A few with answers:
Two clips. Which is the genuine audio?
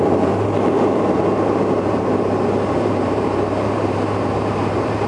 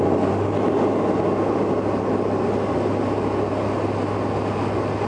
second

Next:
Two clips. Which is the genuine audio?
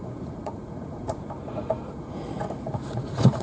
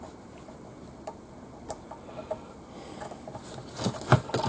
second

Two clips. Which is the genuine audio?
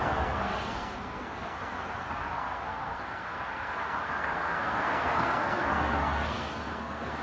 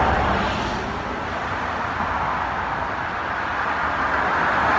second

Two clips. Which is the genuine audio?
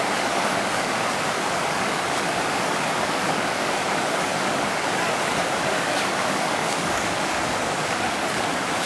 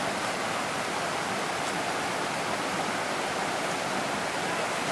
second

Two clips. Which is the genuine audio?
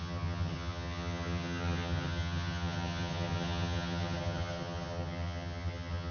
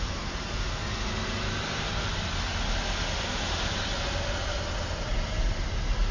second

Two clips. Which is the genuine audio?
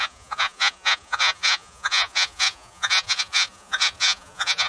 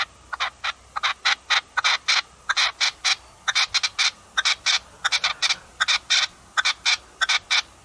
second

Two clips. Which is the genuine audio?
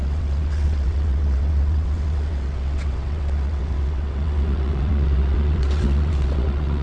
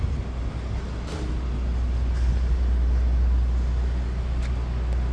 second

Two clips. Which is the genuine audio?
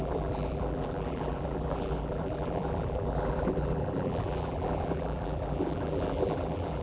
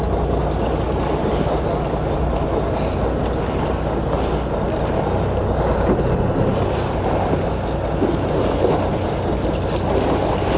second